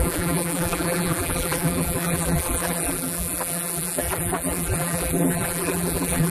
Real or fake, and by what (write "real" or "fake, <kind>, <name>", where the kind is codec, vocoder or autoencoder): fake, vocoder, BigVGAN v2